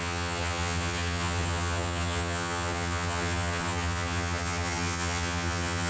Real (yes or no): no